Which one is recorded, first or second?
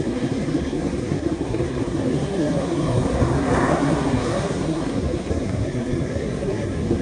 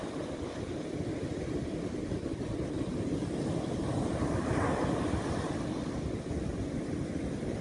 second